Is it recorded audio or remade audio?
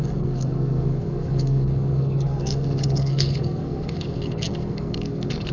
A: remade